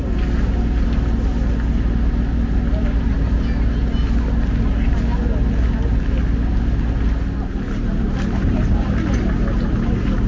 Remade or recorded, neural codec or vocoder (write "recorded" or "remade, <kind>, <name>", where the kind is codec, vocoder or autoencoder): recorded